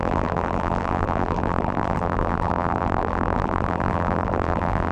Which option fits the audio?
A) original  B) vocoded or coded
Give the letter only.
B